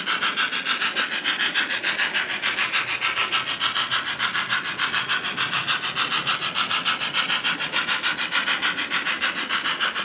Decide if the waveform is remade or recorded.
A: recorded